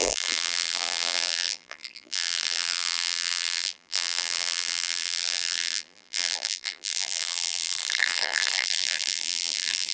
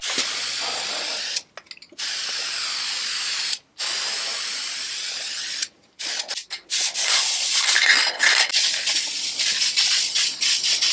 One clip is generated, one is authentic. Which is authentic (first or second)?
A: second